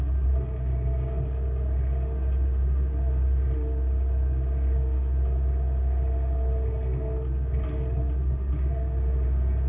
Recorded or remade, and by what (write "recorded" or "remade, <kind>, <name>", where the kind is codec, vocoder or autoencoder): recorded